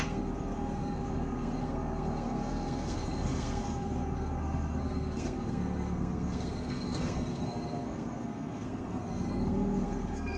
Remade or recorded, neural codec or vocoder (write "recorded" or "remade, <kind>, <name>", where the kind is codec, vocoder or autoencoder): remade, codec, SNAC